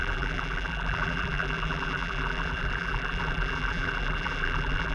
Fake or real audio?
fake